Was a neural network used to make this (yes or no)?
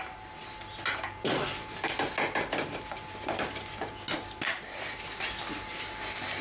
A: no